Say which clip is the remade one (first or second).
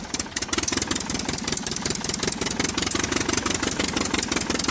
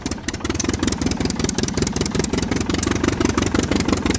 second